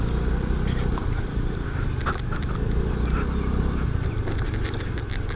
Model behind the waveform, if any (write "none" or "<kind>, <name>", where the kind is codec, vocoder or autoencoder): none